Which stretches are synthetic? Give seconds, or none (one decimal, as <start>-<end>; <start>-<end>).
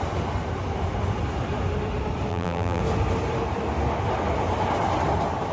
2.3-2.8